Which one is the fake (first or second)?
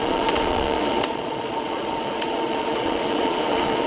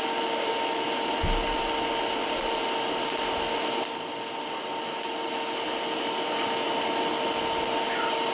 first